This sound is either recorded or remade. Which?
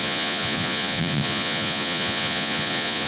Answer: remade